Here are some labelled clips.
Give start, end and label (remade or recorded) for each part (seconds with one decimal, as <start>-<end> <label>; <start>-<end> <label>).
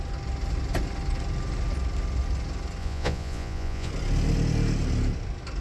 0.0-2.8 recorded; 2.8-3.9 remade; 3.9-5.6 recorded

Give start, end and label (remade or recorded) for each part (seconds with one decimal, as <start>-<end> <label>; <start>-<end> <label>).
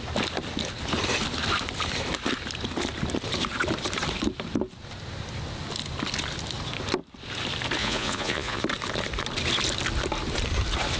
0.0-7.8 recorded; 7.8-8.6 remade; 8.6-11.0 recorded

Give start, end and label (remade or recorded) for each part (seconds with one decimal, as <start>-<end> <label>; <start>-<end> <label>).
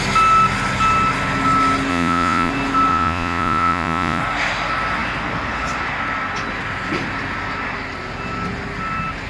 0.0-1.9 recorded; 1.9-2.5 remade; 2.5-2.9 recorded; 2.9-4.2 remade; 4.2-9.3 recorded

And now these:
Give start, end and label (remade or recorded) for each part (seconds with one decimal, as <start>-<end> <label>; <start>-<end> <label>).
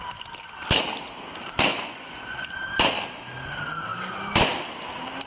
0.0-1.7 recorded; 1.7-2.5 remade; 2.5-5.3 recorded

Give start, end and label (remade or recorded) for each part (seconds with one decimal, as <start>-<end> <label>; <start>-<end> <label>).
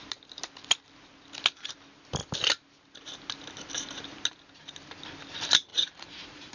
0.0-5.7 recorded; 5.7-6.5 remade